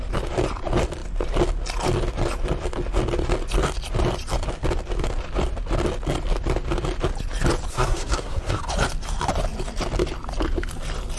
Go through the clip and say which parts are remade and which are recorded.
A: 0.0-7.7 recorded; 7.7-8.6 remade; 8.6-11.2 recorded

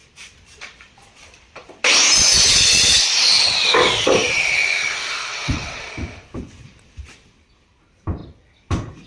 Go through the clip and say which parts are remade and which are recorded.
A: 0.0-5.3 recorded; 5.3-5.9 remade; 5.9-9.1 recorded

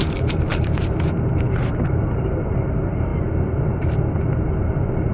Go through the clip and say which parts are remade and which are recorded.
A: 0.0-3.1 remade; 3.1-4.6 recorded; 4.6-5.1 remade

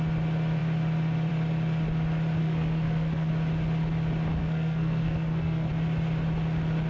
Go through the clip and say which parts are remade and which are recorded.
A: 0.0-2.4 recorded; 2.4-3.3 remade; 3.3-4.4 recorded; 4.4-5.7 remade; 5.7-6.9 recorded

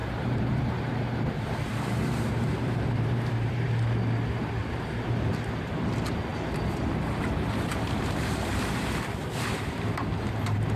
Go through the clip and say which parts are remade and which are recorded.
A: 0.0-3.7 remade; 3.7-4.6 recorded; 4.6-5.3 remade; 5.3-7.7 recorded; 7.7-10.8 remade

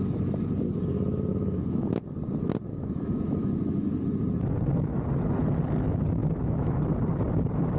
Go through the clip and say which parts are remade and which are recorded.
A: 0.0-1.3 recorded; 1.3-2.1 remade; 2.1-2.7 recorded; 2.7-4.0 remade; 4.0-6.2 recorded; 6.2-6.8 remade; 6.8-7.8 recorded